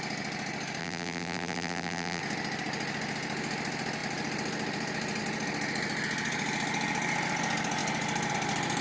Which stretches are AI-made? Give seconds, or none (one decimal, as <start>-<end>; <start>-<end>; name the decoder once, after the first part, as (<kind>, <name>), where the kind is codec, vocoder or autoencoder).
0.8-2.2 (vocoder, BigVGAN v2)